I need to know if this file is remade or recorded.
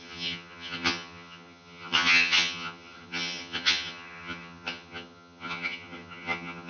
remade